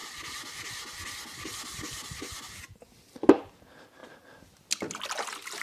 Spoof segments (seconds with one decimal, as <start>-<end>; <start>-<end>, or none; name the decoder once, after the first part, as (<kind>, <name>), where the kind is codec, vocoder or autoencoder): none

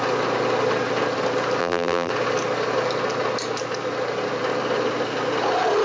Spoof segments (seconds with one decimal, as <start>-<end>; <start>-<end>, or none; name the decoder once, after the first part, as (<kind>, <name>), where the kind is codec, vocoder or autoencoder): 1.6-2.1 (vocoder, BigVGAN v2)

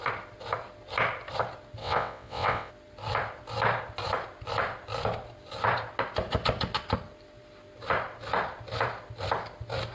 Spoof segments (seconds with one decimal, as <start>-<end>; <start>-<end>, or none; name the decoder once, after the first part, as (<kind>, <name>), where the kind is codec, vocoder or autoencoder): 1.8-2.7 (vocoder, WaveNeXt)

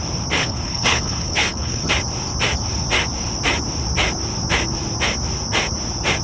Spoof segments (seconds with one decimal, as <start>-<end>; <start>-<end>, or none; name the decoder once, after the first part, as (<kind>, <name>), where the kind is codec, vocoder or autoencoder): 0.4-1.9 (codec, HILCodec)